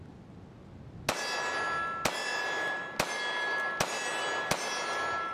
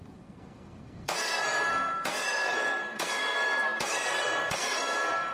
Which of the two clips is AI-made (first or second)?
second